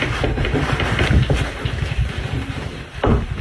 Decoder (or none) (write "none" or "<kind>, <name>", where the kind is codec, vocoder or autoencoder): none